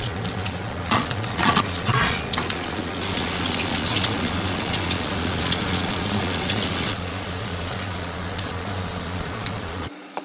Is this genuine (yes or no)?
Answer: no